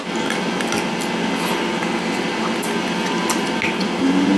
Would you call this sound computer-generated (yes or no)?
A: no